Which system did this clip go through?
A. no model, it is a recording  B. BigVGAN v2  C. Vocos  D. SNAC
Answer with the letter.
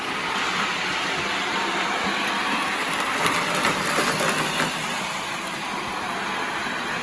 A